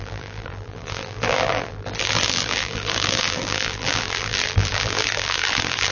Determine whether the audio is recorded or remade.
remade